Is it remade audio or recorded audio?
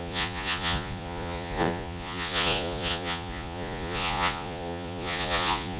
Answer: remade